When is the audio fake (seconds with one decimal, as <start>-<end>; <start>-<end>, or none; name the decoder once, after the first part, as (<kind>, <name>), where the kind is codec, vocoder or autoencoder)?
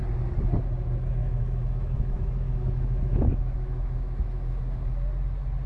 1.2-4.6 (autoencoder, DAC-VAE)